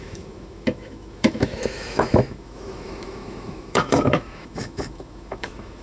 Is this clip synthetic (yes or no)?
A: yes